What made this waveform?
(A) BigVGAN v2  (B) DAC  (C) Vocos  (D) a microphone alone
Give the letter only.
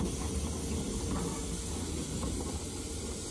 D